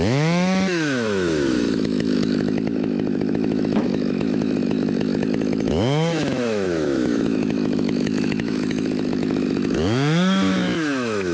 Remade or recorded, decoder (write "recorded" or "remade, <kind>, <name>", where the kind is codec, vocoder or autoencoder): remade, autoencoder, DAC-VAE